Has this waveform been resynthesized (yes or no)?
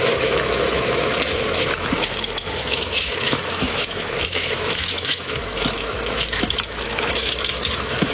yes